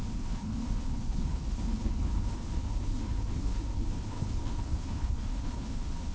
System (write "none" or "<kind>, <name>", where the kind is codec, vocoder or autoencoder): codec, HILCodec